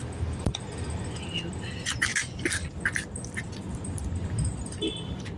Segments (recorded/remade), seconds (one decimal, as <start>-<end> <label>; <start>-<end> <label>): 0.0-5.4 recorded